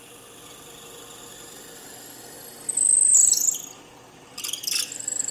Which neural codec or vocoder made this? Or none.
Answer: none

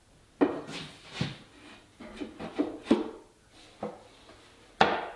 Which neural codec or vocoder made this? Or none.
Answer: none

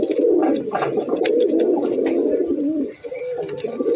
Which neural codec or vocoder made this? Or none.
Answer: none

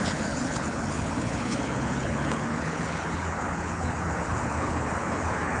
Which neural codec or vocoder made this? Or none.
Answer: codec, HILCodec